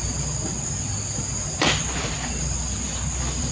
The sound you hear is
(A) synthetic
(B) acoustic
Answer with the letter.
B